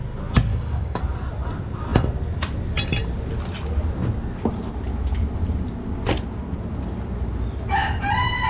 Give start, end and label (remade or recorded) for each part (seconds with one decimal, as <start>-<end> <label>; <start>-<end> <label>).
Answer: 0.0-0.5 recorded; 0.5-1.0 remade; 1.0-8.5 recorded